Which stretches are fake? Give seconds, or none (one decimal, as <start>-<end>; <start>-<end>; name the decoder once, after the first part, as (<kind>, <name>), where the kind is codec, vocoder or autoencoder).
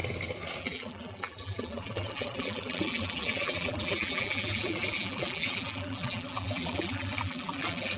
0.6-8.0 (vocoder, BigVGAN v2)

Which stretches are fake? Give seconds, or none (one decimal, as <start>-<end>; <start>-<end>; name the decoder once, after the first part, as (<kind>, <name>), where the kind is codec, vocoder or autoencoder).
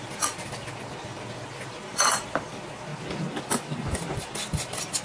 1.9-2.5 (vocoder, BigVGAN v2)